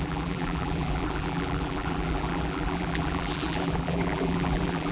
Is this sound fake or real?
fake